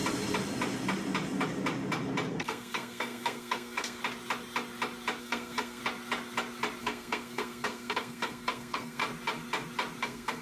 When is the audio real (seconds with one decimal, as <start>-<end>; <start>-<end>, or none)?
0.0-2.3; 4.0-5.2; 5.8-6.8; 9.0-10.0